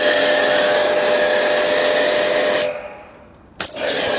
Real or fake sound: real